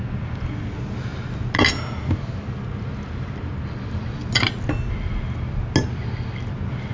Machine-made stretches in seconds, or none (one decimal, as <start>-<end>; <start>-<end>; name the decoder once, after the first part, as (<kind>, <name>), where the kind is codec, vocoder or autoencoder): none